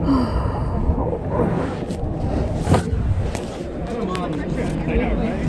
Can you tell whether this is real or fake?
real